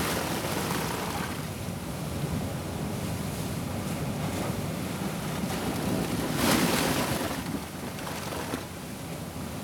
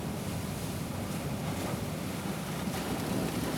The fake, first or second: second